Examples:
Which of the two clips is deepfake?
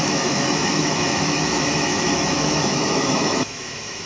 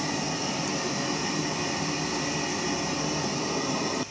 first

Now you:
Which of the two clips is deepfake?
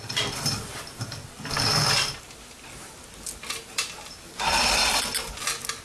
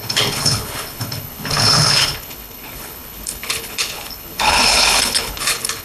second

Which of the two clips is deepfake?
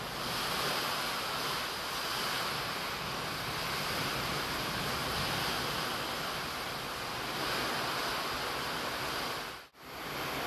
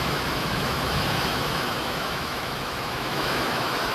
second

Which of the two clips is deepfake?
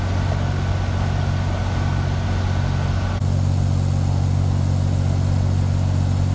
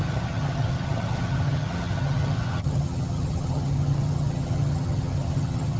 second